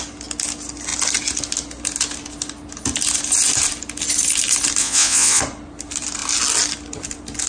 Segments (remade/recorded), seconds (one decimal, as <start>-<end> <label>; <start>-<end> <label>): 0.0-4.8 recorded; 4.8-5.4 remade; 5.4-7.5 recorded